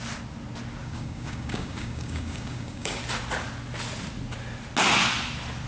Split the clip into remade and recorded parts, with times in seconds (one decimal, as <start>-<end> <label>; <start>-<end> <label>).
0.0-0.8 recorded; 0.8-3.0 remade; 3.0-5.7 recorded